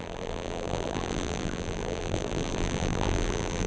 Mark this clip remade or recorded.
remade